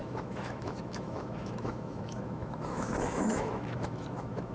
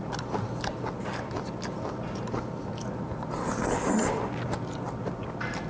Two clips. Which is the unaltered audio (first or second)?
second